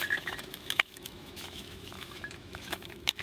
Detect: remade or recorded remade